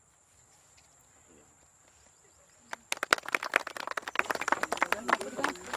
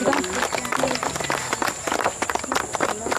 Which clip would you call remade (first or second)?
first